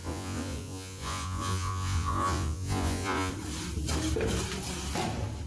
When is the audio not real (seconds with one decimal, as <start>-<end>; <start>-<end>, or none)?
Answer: 0.0-3.3